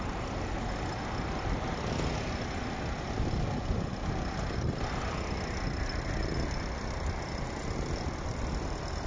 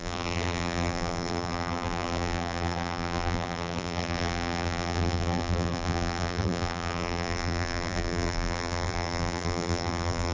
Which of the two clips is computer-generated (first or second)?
second